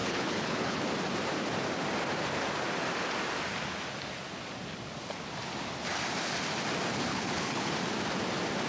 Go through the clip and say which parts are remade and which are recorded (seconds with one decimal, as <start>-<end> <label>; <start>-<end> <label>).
0.0-0.8 remade; 0.8-7.1 recorded; 7.1-7.7 remade; 7.7-8.7 recorded